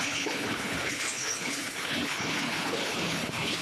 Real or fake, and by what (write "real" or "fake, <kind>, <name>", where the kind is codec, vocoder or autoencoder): fake, codec, HILCodec